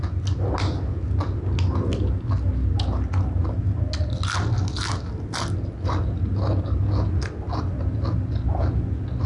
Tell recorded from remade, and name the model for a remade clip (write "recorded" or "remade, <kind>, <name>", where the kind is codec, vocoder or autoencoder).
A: recorded